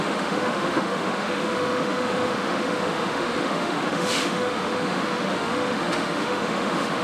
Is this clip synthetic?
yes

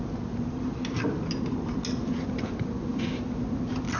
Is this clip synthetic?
no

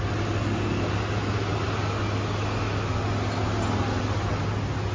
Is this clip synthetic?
no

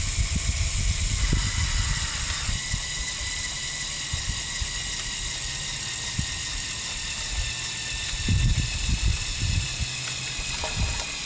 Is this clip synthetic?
no